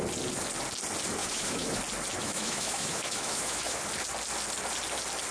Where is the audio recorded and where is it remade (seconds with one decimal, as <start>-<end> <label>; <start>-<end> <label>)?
0.0-1.2 recorded; 1.2-1.8 remade; 1.8-2.2 recorded; 2.2-3.8 remade; 3.8-5.3 recorded